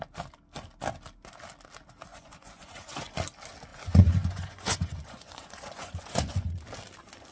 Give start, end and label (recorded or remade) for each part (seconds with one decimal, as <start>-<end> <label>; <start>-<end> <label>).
0.0-2.1 recorded; 2.1-3.1 remade; 3.1-3.7 recorded; 3.7-6.5 remade; 6.5-7.3 recorded